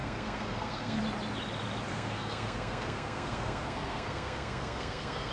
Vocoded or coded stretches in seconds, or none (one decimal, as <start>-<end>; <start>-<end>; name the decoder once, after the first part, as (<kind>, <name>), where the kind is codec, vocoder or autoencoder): 0.0-1.0 (codec, SNAC); 1.9-5.3